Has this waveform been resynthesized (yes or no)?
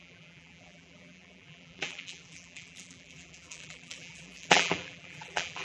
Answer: yes